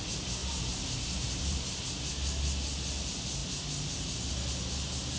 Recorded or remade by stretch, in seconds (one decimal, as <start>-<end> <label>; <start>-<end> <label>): 0.0-0.4 recorded; 0.4-1.8 remade; 1.8-5.2 recorded